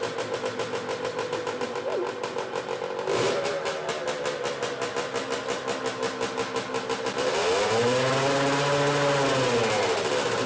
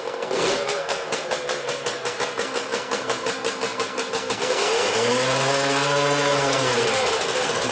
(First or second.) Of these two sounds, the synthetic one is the second